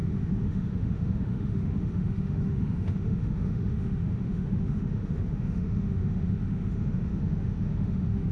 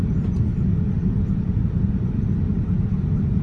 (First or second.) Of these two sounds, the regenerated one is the first